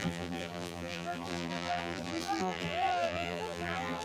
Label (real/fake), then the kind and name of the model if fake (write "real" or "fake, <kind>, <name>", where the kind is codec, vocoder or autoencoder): fake, vocoder, BigVGAN v2